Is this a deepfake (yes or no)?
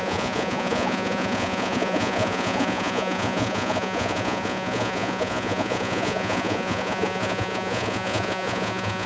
yes